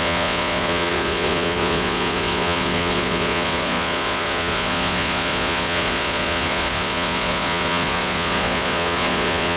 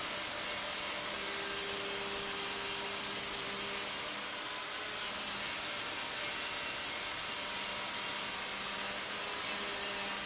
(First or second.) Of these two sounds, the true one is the second